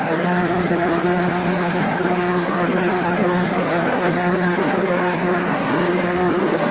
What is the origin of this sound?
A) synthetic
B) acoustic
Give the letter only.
A